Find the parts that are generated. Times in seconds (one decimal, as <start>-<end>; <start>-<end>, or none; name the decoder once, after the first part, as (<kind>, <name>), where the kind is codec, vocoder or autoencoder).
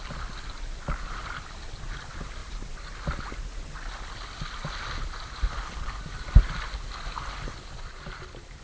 none